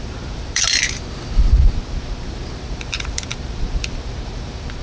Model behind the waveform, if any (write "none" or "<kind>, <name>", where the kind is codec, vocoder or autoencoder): vocoder, BigVGAN v2